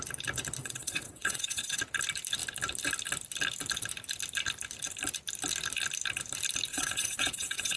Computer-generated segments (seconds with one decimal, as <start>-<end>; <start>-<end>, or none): 0.6-1.8; 6.7-7.8